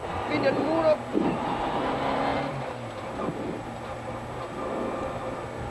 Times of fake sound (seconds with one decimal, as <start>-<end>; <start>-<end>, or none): 1.1-1.9; 2.3-4.4